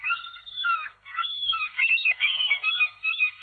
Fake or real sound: fake